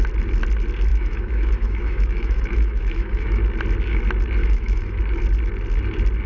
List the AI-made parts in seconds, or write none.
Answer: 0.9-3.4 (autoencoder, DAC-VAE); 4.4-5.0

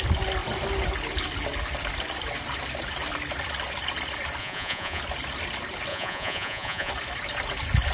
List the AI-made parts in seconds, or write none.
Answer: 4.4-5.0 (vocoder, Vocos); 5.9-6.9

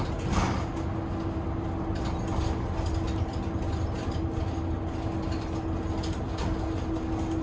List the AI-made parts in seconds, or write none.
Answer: none

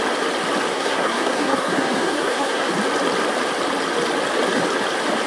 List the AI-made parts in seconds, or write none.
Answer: 0.7-2.7 (codec, SNAC)

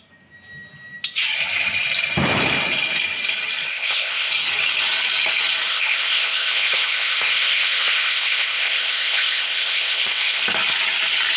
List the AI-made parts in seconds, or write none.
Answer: 3.7-4.3 (codec, ZipCodec); 5.7-10.4

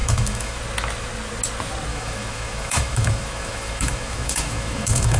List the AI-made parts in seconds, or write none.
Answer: 0.0-0.6 (autoencoder, DAC-VAE); 1.9-5.2

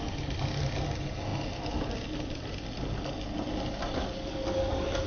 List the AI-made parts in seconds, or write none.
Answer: none

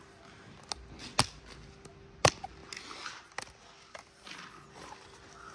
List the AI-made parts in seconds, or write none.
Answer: none